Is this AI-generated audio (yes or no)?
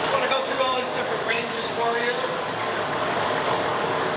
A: yes